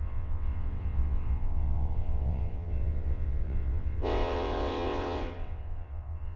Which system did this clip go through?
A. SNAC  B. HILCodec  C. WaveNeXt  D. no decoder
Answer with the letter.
C